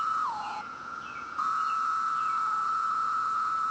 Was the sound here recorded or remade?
remade